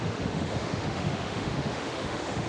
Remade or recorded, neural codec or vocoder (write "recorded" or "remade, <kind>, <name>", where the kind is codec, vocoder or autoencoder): remade, autoencoder, DAC-VAE